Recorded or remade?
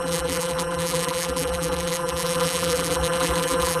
remade